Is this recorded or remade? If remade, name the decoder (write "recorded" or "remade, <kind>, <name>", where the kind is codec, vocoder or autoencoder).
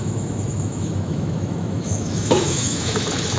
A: remade, autoencoder, DAC-VAE